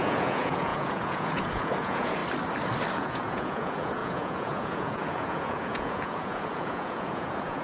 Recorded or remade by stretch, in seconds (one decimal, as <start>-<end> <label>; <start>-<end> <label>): 0.0-2.2 remade; 2.2-2.9 recorded; 2.9-7.6 remade